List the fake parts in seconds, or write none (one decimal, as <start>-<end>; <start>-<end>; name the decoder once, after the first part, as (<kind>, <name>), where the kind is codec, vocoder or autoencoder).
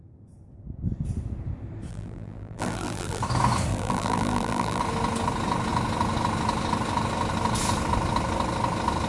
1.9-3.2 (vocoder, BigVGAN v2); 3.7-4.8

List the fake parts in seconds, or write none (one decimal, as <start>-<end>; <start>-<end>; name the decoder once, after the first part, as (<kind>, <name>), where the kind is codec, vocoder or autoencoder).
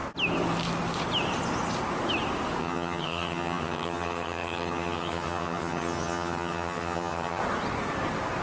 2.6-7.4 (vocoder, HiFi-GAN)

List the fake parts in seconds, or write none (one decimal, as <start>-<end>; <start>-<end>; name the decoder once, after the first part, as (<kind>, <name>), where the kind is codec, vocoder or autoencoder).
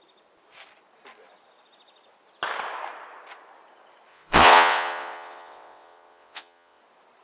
4.1-6.8 (vocoder, WaveNeXt)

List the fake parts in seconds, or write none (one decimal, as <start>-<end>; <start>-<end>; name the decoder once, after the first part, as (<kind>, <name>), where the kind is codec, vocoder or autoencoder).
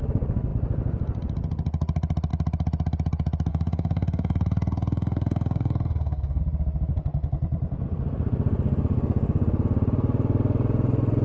3.5-6.4 (codec, SNAC)